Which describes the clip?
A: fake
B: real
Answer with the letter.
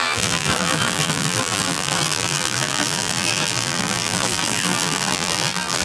A